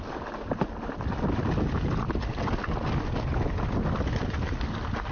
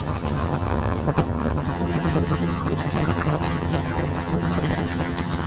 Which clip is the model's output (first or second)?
second